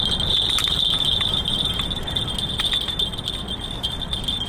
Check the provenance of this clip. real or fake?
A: real